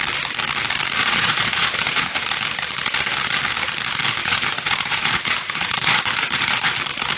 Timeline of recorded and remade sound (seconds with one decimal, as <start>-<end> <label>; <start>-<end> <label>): 0.0-1.0 recorded; 1.0-2.2 remade; 2.2-4.2 recorded; 4.2-6.7 remade; 6.7-7.2 recorded

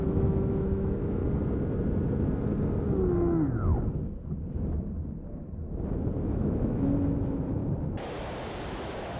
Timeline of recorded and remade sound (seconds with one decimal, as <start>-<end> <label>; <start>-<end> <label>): 0.0-1.2 remade; 1.2-6.2 recorded; 6.2-7.6 remade; 7.6-8.6 recorded; 8.6-9.2 remade